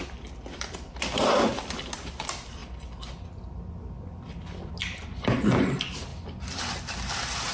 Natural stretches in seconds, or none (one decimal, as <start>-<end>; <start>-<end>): 6.1-6.8